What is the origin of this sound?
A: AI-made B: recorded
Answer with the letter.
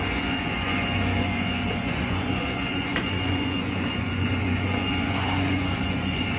A